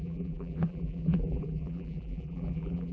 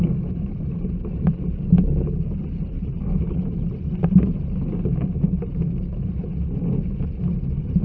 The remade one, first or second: first